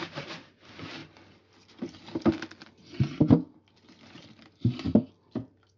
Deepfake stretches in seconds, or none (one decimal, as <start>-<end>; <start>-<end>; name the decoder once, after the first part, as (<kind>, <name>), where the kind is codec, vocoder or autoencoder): none